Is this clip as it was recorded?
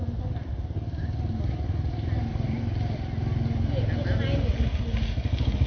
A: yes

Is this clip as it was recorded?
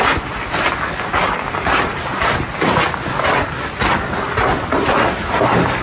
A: yes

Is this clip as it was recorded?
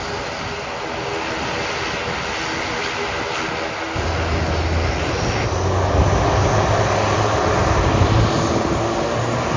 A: yes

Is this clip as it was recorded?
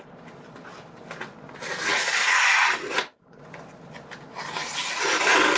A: yes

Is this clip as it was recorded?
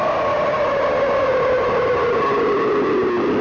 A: yes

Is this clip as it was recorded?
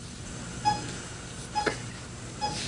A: yes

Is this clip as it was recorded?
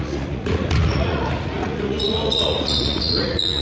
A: no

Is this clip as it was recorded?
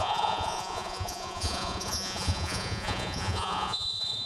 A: no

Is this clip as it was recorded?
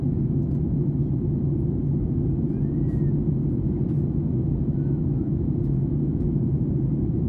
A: yes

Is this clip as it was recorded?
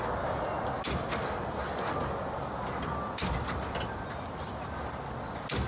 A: yes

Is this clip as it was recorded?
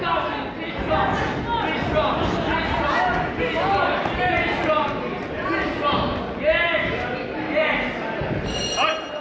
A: yes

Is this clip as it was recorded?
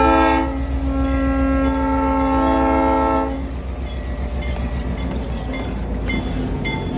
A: yes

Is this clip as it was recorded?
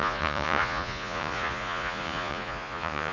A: no